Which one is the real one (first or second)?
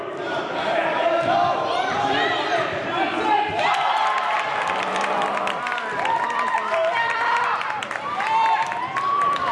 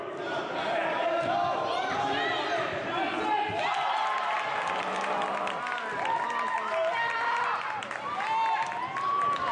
second